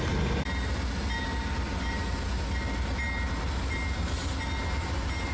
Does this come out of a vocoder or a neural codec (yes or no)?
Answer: no